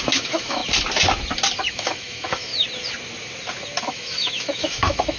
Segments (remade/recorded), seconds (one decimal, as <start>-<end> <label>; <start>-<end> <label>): 0.0-0.6 remade; 0.6-1.7 recorded; 1.7-2.5 remade; 2.5-3.8 recorded; 3.8-5.2 remade